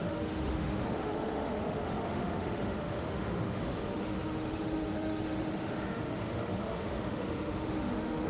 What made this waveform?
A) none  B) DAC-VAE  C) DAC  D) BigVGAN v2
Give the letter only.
B